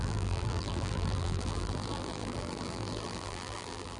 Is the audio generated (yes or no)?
yes